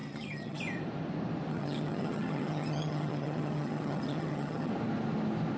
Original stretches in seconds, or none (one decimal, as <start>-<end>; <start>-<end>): 0.6-1.5; 4.7-5.6